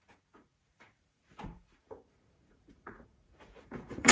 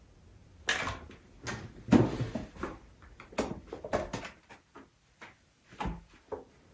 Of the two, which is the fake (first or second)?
first